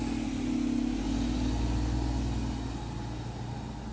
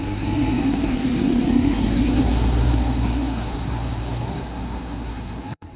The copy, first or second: second